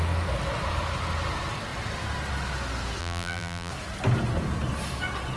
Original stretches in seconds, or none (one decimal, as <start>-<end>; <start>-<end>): 0.0-3.0; 3.7-5.4